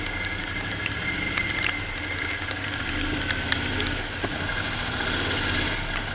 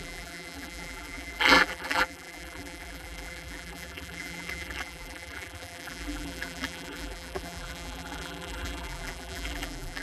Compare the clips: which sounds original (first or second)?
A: first